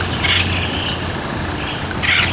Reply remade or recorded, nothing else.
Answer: recorded